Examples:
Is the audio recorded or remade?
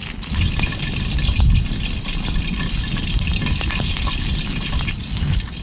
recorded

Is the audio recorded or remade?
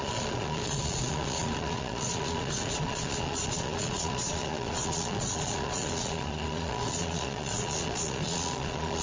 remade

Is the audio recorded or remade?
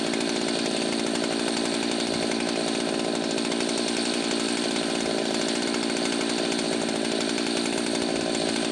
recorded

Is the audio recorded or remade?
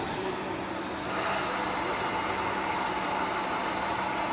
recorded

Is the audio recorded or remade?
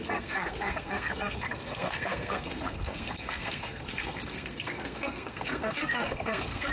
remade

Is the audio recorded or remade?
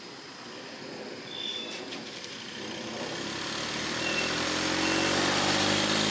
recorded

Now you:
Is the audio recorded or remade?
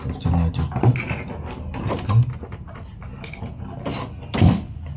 recorded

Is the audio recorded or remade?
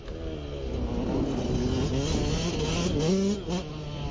recorded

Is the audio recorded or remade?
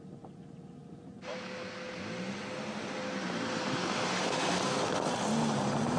recorded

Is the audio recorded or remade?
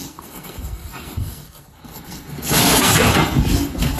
remade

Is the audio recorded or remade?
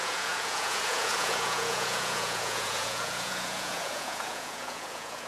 remade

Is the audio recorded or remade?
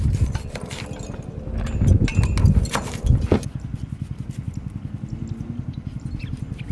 recorded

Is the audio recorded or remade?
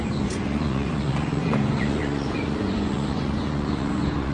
remade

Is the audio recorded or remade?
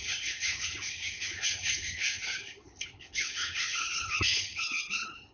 remade